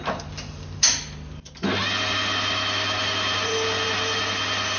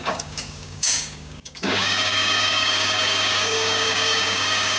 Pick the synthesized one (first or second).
second